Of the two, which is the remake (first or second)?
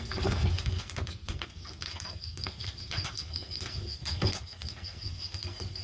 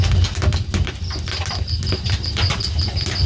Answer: first